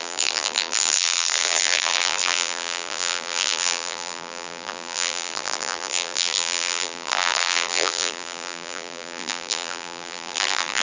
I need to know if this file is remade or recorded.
remade